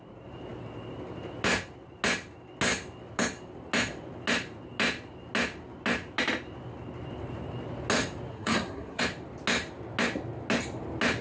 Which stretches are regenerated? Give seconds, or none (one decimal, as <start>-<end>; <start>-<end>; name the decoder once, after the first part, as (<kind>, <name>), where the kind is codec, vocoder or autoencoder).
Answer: 8.3-9.0 (codec, SNAC)